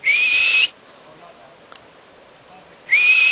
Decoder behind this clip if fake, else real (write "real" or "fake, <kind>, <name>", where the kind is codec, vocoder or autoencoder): real